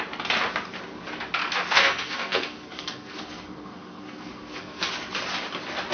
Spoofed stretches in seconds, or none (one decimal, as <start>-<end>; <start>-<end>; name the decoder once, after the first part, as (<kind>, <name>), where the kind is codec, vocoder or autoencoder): 1.4-4.9 (codec, SNAC)